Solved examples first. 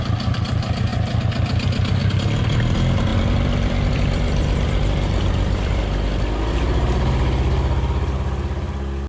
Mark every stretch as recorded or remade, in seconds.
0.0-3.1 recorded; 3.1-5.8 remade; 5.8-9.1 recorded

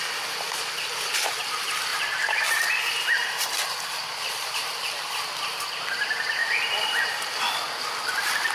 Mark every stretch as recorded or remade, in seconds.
0.0-8.5 recorded

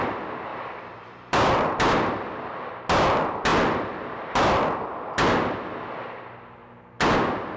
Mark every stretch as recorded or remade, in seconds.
0.0-0.5 recorded; 0.5-2.7 remade; 2.7-7.6 recorded

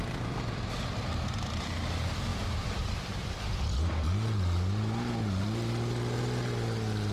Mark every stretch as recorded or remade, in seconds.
0.0-2.3 recorded; 2.3-3.5 remade; 3.5-7.1 recorded

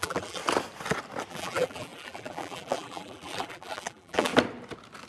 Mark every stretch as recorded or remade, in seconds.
0.0-0.4 remade; 0.4-1.3 recorded; 1.3-4.3 remade; 4.3-5.1 recorded